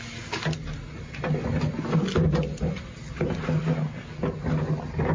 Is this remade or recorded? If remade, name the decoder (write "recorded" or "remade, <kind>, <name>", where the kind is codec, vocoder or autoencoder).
recorded